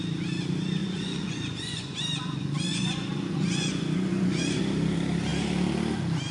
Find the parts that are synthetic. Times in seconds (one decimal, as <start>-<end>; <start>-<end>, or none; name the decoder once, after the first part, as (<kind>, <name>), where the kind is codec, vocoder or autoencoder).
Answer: 0.8-4.6 (vocoder, Vocos)